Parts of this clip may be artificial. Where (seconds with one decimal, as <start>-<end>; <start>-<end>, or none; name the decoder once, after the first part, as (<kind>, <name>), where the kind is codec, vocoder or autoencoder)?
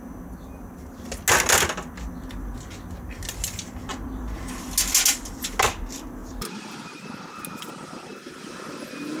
6.2-6.9 (vocoder, BigVGAN v2)